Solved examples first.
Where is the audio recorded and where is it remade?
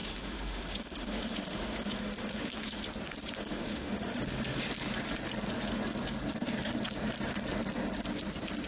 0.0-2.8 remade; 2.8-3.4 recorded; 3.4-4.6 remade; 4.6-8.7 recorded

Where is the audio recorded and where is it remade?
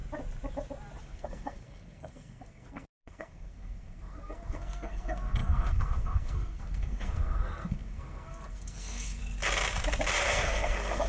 0.0-1.0 recorded; 1.0-9.2 remade; 9.2-10.2 recorded; 10.2-11.1 remade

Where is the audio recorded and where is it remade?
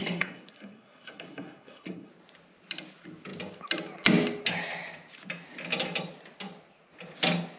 0.0-2.1 remade; 2.1-7.6 recorded